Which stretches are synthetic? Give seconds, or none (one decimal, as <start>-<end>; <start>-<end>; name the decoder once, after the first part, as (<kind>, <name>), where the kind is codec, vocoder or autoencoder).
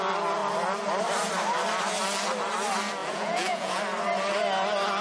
3.0-3.8 (vocoder, Vocos)